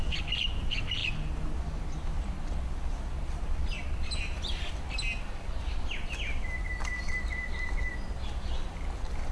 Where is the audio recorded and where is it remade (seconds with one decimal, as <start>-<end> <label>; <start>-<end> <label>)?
0.0-9.3 recorded